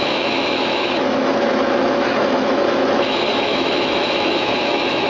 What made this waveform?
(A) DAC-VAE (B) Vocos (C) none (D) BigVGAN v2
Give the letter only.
A